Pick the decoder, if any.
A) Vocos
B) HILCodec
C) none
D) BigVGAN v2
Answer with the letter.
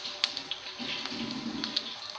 C